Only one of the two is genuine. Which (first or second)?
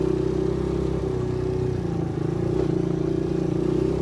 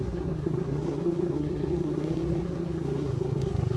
first